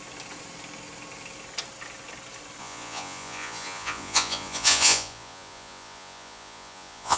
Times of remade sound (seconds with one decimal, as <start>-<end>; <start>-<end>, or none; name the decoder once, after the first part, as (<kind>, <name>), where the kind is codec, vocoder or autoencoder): 2.6-7.2 (vocoder, Vocos)